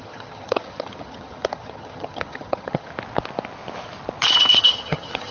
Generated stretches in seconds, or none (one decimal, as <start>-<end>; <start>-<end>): 0.0-2.9; 4.6-5.3